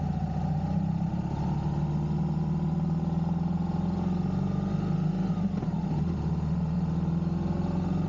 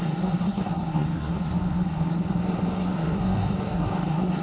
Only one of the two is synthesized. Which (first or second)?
second